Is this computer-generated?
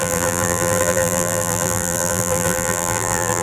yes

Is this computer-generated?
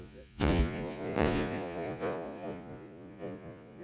yes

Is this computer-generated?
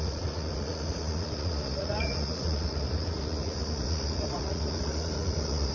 yes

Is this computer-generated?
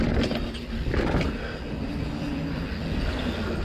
no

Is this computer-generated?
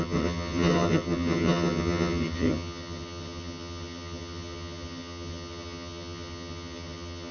yes